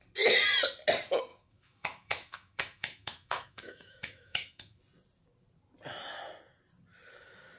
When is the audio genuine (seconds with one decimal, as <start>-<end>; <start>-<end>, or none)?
0.0-1.3; 4.8-7.6